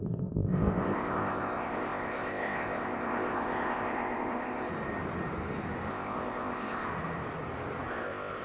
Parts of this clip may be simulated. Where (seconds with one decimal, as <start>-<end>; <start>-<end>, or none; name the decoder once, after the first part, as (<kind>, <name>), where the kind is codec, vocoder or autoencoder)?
0.0-4.7 (codec, ZipCodec); 5.9-6.9; 7.9-8.4